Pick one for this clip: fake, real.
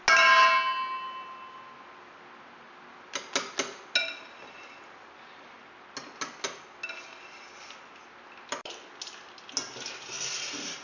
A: real